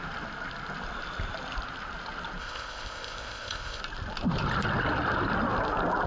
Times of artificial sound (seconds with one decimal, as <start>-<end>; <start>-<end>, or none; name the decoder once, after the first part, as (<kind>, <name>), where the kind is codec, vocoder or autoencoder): 2.4-3.8 (codec, ZipCodec)